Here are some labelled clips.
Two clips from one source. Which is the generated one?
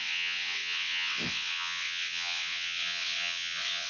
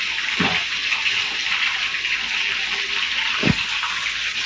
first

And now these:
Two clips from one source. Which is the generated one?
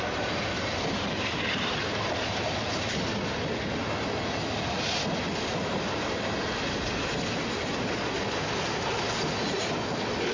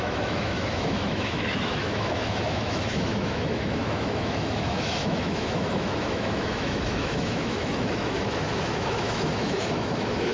second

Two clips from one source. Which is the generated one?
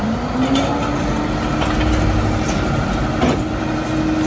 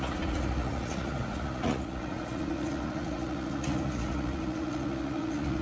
second